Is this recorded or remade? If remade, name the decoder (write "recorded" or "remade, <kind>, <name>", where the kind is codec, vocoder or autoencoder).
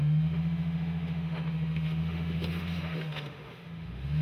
remade, autoencoder, DAC-VAE